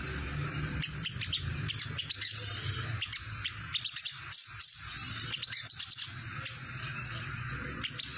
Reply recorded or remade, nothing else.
recorded